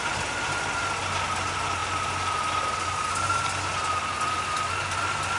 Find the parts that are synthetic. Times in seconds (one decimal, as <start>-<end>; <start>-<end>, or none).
none